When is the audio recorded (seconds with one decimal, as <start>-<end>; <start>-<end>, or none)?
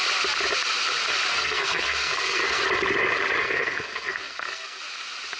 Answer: 0.0-1.3; 2.6-3.4; 4.8-5.4